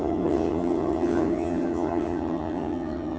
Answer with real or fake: fake